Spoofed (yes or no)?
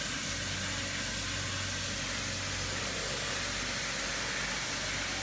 no